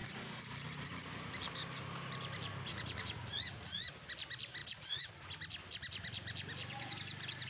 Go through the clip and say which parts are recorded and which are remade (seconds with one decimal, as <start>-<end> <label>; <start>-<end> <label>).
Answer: 0.0-1.3 remade; 1.3-2.7 recorded; 2.7-3.9 remade; 3.9-4.6 recorded; 4.6-5.1 remade; 5.1-7.5 recorded